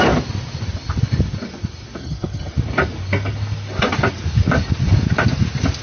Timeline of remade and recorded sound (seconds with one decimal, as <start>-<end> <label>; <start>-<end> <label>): 0.0-2.0 recorded; 2.0-2.5 remade; 2.5-5.8 recorded